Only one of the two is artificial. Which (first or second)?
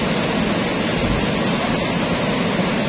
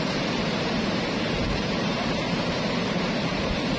second